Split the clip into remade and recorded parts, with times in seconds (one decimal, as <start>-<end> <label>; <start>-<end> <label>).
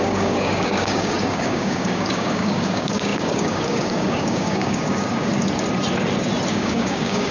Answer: 0.0-5.3 remade; 5.3-6.5 recorded; 6.5-7.3 remade